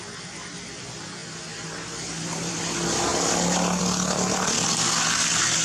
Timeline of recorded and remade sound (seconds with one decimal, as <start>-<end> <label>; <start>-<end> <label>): 0.0-5.6 recorded